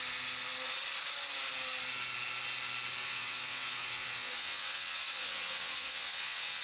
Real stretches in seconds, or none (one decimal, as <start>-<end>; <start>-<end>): 0.0-3.0